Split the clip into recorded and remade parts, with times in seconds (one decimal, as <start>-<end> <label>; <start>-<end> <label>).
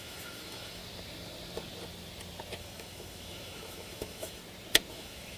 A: 0.0-0.8 remade; 0.8-2.6 recorded; 2.6-4.4 remade; 4.4-4.9 recorded; 4.9-5.4 remade